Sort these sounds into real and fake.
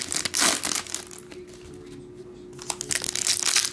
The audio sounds real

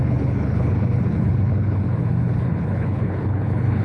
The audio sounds fake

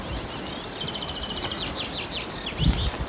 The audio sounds real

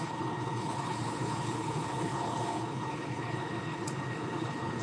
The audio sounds fake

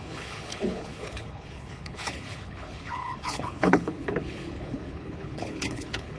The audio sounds fake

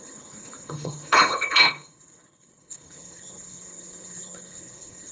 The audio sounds fake